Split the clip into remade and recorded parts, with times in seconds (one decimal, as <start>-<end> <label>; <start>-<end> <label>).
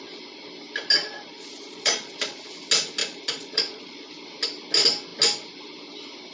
0.0-0.9 recorded; 0.9-2.4 remade; 2.4-3.0 recorded; 3.0-4.1 remade; 4.1-6.3 recorded